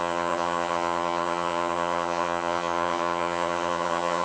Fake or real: fake